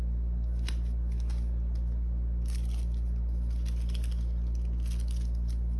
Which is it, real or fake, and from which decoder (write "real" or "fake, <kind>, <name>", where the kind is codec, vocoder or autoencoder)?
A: real